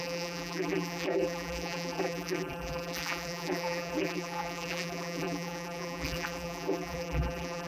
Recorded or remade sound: remade